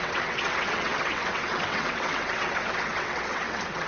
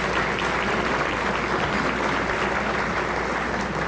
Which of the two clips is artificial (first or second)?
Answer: first